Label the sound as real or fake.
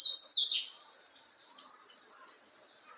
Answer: real